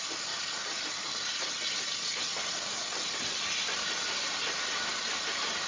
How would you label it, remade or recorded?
remade